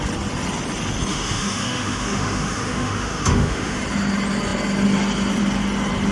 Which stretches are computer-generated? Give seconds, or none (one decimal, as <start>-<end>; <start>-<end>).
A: 1.1-3.8